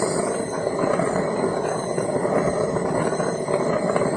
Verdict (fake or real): real